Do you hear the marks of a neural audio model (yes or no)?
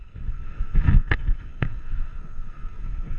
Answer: yes